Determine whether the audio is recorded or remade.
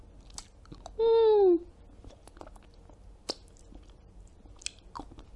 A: recorded